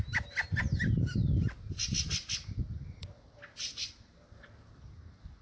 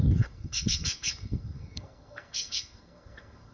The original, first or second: first